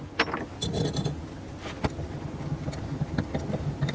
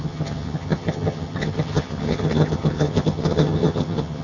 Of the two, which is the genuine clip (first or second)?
first